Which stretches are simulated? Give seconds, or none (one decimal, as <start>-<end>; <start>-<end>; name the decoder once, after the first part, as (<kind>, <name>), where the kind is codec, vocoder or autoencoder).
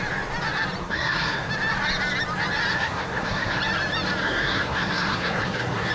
0.8-1.5 (codec, SNAC); 2.7-3.6; 4.2-5.9